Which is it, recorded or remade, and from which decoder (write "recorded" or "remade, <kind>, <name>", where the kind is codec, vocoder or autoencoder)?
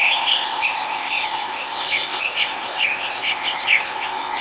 remade, codec, ZipCodec